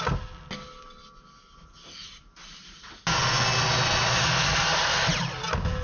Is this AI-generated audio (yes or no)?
no